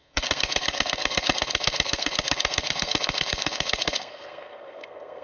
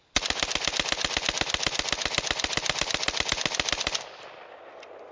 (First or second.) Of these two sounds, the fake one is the first